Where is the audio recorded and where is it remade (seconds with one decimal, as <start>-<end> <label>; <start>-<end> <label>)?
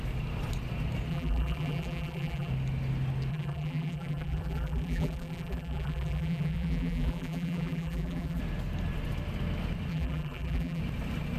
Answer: 0.0-1.1 recorded; 1.1-2.5 remade; 2.5-3.3 recorded; 3.3-8.4 remade; 8.4-9.9 recorded; 9.9-10.8 remade; 10.8-11.4 recorded